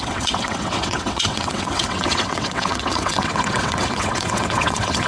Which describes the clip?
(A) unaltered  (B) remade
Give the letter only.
B